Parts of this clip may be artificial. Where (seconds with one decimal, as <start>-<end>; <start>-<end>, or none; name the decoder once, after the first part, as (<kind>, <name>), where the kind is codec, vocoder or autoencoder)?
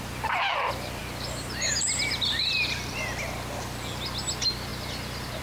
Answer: none